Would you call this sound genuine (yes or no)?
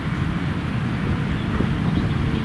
yes